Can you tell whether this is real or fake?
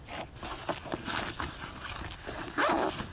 real